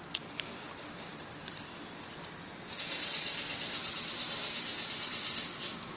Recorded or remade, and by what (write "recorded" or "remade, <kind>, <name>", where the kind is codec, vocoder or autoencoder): recorded